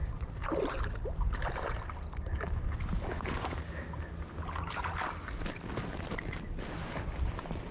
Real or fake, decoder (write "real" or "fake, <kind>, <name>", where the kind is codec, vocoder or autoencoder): real